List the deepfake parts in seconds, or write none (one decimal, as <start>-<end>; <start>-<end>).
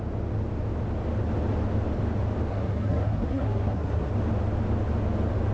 2.5-4.1